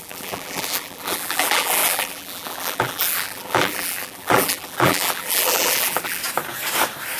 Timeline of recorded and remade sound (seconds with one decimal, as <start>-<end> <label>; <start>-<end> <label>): 0.0-6.2 remade; 6.2-7.2 recorded